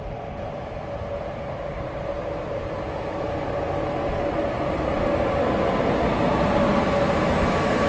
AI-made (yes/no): no